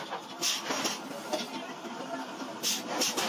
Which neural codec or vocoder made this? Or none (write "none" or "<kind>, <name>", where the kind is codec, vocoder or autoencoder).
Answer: none